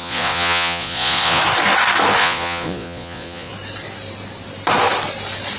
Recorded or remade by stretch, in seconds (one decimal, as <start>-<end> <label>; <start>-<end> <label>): 0.0-1.4 remade; 1.4-2.2 recorded; 2.2-3.5 remade; 3.5-5.6 recorded